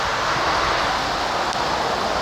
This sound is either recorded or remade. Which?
recorded